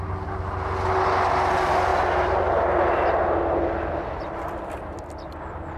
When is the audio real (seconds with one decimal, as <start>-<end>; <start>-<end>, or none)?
0.0-5.8